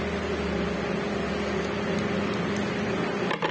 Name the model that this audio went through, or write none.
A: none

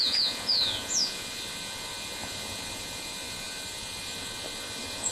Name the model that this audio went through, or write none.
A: vocoder, Vocos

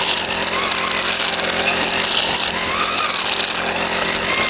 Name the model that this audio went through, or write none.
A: none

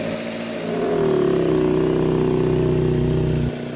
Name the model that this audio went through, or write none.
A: none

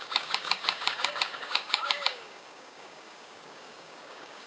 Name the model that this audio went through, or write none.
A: codec, DAC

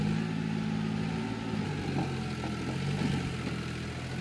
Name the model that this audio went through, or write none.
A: none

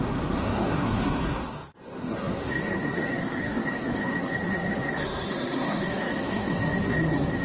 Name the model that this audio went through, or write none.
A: codec, SNAC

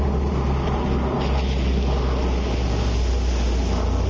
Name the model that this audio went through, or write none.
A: none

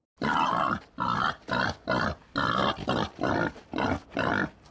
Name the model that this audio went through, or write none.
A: none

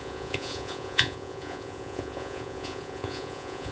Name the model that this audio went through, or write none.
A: vocoder, Vocos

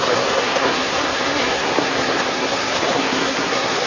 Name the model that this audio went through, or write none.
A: codec, SNAC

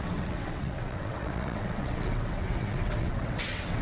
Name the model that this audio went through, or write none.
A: vocoder, WaveNeXt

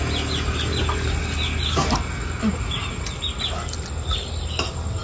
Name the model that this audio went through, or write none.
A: none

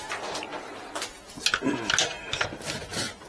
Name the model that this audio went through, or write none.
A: none